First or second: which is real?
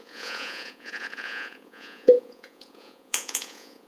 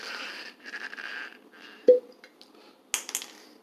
second